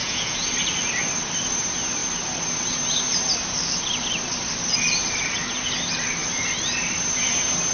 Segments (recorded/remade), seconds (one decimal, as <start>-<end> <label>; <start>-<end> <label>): 0.0-0.5 remade; 0.5-7.7 recorded